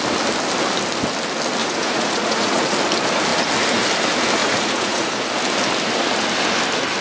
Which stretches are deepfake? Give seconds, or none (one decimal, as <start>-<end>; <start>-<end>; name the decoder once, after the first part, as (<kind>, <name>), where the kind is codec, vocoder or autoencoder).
1.6-2.7 (vocoder, Vocos); 4.4-5.3